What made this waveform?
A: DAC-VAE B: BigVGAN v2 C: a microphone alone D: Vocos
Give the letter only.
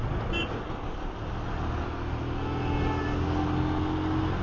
C